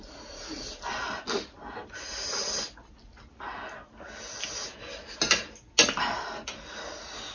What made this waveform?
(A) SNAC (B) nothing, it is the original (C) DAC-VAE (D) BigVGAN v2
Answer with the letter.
B